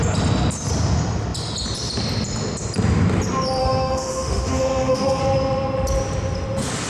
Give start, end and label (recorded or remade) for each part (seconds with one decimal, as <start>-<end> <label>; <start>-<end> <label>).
0.0-3.6 recorded; 3.6-5.2 remade; 5.2-6.9 recorded